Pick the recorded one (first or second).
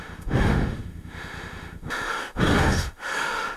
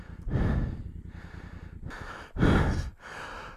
second